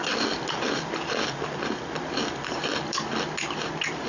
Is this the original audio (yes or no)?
yes